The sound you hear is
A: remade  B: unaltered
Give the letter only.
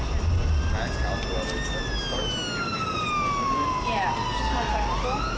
B